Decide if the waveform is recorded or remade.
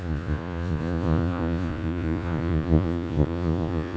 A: remade